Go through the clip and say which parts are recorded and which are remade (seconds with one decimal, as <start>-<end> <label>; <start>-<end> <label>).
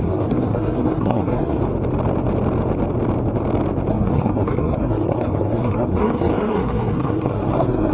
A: 0.0-1.6 remade; 1.6-3.9 recorded; 3.9-7.9 remade